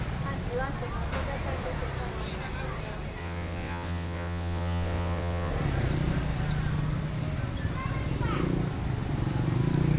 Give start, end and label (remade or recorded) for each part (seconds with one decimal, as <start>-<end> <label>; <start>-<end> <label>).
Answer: 0.0-3.2 recorded; 3.2-5.5 remade; 5.5-10.0 recorded

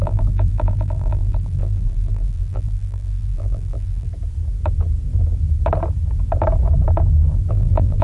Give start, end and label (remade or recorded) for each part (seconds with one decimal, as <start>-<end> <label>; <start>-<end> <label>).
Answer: 0.0-4.1 remade; 4.1-7.5 recorded; 7.5-8.0 remade

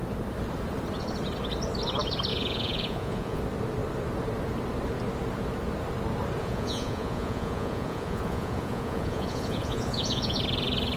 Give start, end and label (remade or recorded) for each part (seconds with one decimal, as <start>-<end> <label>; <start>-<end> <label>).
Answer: 0.0-2.3 recorded; 2.3-3.4 remade; 3.4-6.4 recorded; 6.4-10.4 remade; 10.4-11.0 recorded